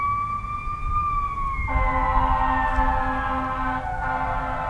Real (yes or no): yes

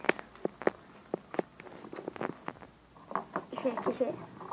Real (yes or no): yes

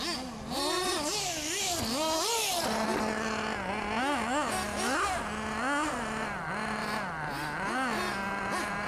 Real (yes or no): yes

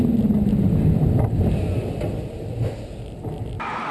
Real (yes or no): yes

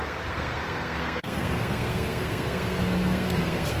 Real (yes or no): no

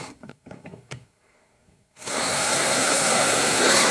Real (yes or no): no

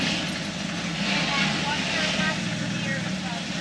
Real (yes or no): yes